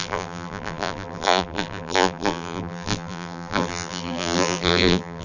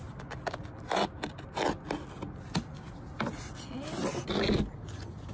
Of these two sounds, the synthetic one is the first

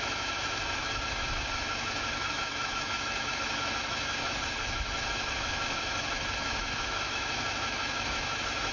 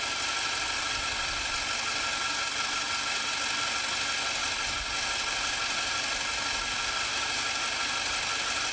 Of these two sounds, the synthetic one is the first